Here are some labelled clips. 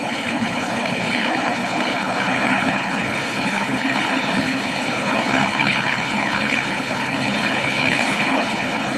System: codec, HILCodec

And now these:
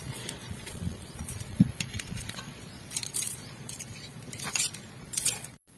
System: vocoder, Vocos